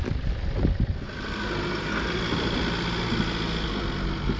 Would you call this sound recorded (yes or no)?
yes